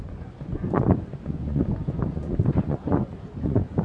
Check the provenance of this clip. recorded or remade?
remade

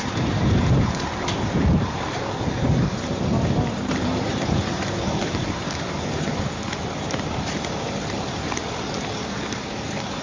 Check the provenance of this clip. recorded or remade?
remade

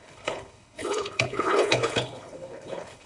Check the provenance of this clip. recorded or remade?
remade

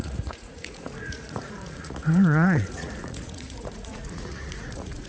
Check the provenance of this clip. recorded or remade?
remade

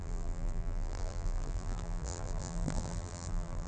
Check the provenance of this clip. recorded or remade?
remade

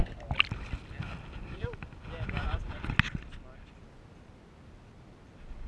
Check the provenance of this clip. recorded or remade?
recorded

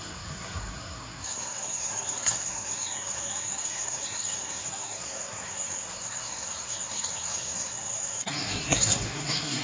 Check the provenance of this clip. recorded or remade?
remade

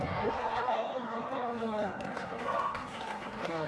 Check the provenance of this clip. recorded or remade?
remade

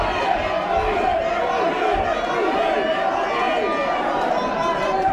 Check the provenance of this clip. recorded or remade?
recorded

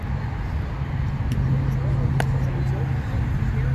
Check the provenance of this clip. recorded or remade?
recorded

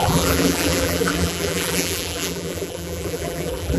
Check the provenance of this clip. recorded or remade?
remade